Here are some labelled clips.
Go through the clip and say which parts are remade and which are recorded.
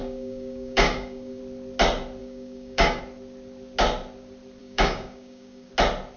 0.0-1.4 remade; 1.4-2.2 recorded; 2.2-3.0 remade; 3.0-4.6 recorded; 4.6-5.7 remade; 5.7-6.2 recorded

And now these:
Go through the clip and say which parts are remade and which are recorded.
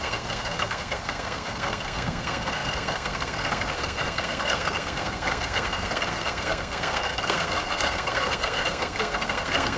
0.0-9.8 remade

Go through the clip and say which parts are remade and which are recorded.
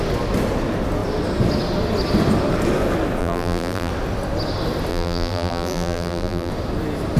0.0-3.2 recorded; 3.2-3.9 remade; 3.9-4.9 recorded; 4.9-6.5 remade; 6.5-7.2 recorded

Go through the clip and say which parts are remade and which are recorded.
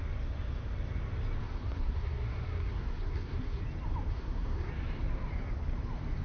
0.0-1.4 recorded; 1.4-3.6 remade; 3.6-4.1 recorded; 4.1-4.7 remade; 4.7-6.2 recorded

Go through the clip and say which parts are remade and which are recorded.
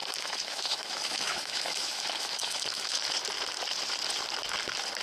0.0-3.0 remade; 3.0-5.0 recorded